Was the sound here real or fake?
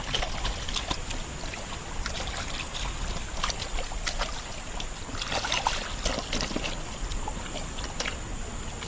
real